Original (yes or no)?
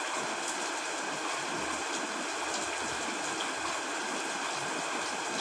yes